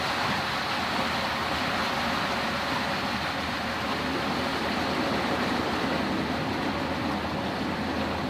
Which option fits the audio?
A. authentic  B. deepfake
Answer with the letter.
A